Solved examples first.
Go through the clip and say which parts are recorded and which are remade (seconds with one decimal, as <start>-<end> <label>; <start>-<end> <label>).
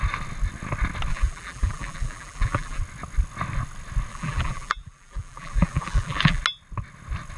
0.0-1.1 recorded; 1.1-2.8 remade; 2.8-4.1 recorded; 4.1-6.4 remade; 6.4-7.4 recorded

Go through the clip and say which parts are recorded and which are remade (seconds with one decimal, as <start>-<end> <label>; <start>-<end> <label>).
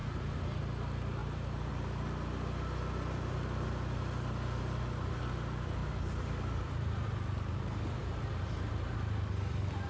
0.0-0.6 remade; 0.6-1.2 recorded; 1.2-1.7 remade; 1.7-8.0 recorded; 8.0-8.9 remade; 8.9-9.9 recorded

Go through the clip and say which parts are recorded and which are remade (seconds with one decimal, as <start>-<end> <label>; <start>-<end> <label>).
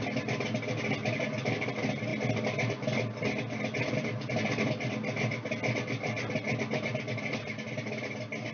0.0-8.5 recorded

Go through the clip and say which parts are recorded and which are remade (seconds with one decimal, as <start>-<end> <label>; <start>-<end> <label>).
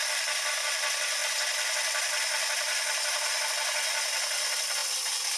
0.0-5.4 recorded